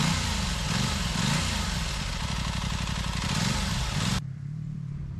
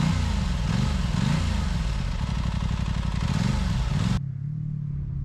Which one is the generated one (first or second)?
first